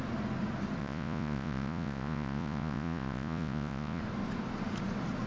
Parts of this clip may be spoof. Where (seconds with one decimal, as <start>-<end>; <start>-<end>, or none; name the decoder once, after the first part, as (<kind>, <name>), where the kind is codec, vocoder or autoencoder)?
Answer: 0.8-4.0 (vocoder, Vocos)